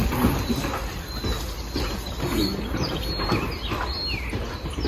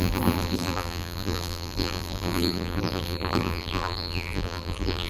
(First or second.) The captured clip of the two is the first